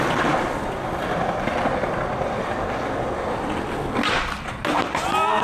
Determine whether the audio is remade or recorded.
recorded